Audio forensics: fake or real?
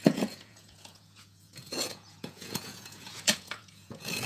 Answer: fake